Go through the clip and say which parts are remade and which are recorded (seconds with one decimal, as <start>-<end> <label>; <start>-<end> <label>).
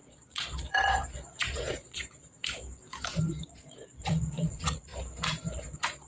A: 0.0-2.2 remade; 2.2-3.3 recorded; 3.3-4.9 remade; 4.9-5.5 recorded; 5.5-6.1 remade